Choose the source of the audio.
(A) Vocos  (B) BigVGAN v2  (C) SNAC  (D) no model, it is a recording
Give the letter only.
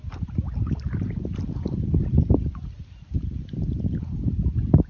D